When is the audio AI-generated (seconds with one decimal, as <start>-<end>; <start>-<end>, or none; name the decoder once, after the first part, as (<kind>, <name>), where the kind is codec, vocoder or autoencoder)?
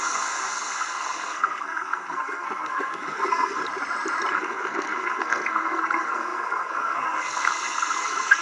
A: 0.0-3.6 (codec, SNAC); 4.3-8.4